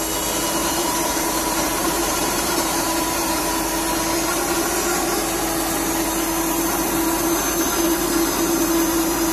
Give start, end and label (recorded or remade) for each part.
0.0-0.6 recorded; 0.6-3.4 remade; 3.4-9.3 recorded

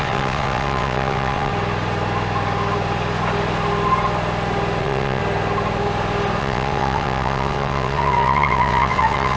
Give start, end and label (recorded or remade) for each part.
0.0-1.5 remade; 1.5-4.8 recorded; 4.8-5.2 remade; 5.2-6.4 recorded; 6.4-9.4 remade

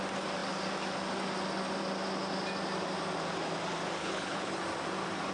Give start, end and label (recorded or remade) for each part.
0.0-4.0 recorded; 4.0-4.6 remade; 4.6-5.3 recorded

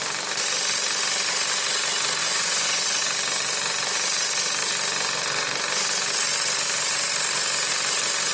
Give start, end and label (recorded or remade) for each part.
0.0-2.2 recorded; 2.2-3.0 remade; 3.0-8.3 recorded